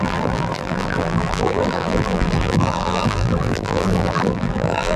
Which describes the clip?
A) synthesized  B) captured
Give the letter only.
A